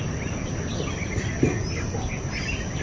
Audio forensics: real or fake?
real